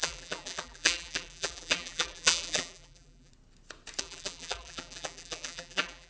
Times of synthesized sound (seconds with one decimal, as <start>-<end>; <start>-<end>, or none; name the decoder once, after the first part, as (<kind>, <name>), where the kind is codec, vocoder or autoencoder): 0.0-3.3 (vocoder, BigVGAN v2); 4.0-6.1